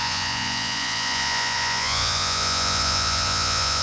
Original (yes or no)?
no